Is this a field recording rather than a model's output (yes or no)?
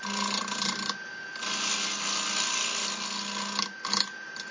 yes